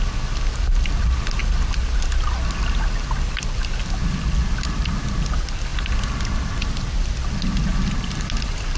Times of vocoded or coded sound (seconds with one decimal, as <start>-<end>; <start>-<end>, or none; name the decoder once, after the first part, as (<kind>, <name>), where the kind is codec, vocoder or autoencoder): none